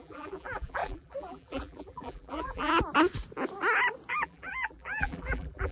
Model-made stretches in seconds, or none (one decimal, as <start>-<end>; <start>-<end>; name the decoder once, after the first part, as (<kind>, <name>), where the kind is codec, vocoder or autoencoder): 0.0-2.7 (vocoder, BigVGAN v2); 4.1-5.7